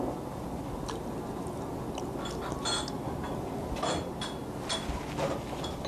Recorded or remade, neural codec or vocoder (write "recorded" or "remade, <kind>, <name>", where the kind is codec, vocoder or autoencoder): recorded